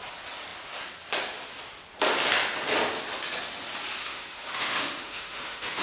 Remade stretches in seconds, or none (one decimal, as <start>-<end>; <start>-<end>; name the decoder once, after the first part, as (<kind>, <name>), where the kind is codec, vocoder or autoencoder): 4.0-5.8 (autoencoder, DAC-VAE)